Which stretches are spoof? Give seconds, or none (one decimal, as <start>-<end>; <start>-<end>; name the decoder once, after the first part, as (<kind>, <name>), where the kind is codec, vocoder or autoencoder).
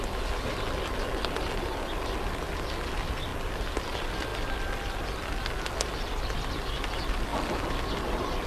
none